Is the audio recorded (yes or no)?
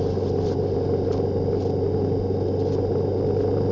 yes